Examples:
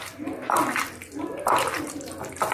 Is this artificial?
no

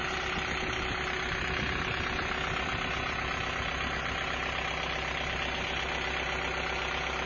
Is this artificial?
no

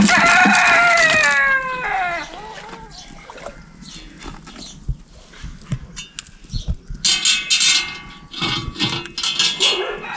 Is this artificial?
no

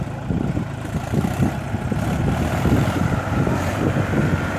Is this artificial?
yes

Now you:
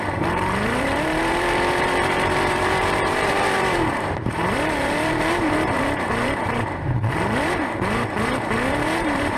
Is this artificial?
yes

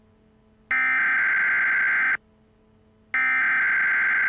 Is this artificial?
no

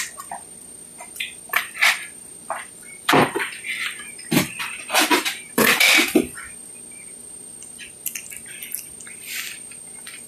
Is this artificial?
yes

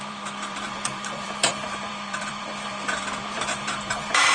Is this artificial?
yes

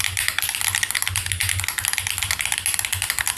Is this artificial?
no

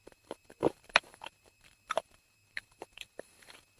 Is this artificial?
yes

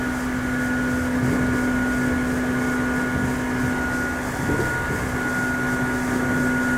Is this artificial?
no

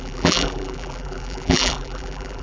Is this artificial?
yes